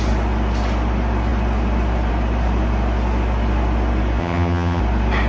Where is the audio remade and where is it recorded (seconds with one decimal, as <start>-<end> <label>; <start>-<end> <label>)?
0.0-4.2 recorded; 4.2-4.8 remade; 4.8-5.3 recorded